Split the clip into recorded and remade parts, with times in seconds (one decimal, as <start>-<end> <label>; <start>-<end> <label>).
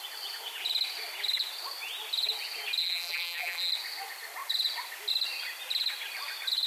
0.0-2.8 recorded; 2.8-3.7 remade; 3.7-6.7 recorded